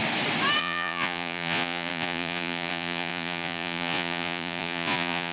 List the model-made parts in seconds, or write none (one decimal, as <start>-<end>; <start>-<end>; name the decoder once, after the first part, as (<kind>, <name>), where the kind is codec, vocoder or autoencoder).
0.6-5.3 (vocoder, Vocos)